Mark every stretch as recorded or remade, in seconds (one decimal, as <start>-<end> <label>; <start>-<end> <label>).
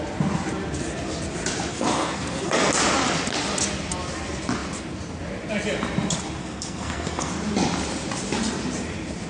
0.0-1.7 recorded; 1.7-2.7 remade; 2.7-6.4 recorded; 6.4-7.3 remade; 7.3-9.3 recorded